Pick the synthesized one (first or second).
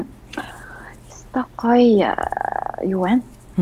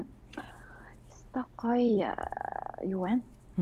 second